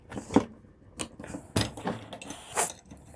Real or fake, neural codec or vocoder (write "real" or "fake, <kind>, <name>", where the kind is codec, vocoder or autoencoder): real